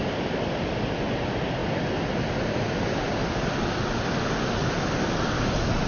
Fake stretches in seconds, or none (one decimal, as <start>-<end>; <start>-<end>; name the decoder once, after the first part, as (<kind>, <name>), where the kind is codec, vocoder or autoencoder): none